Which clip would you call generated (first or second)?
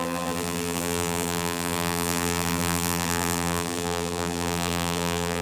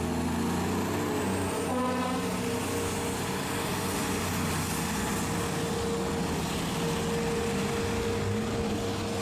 first